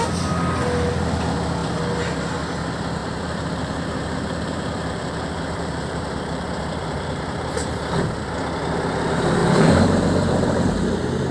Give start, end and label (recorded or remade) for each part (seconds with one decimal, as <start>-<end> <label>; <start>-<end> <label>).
0.0-3.0 recorded; 3.0-7.8 remade; 7.8-9.4 recorded; 9.4-10.7 remade; 10.7-11.3 recorded